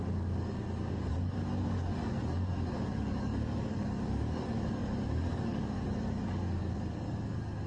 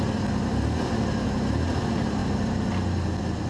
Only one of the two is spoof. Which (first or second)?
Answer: first